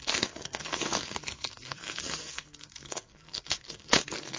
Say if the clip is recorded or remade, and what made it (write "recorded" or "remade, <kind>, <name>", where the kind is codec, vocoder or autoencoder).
remade, codec, SNAC